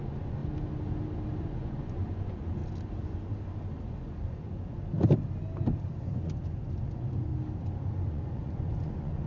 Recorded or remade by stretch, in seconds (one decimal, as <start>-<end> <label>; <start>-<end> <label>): 0.0-0.4 remade; 0.4-1.4 recorded; 1.4-2.6 remade; 2.6-3.8 recorded; 3.8-4.8 remade; 4.8-6.1 recorded; 6.1-7.3 remade; 7.3-7.9 recorded; 7.9-9.3 remade